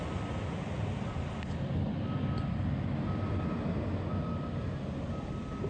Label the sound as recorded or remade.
recorded